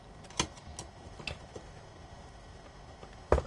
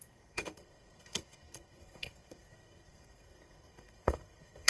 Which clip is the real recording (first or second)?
first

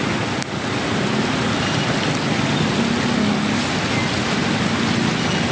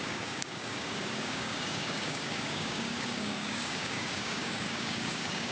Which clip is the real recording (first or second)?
first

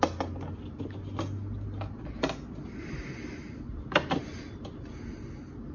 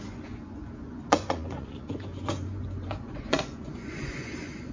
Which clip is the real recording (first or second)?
first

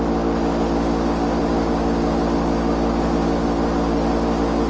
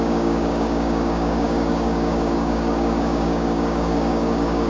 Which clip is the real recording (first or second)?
first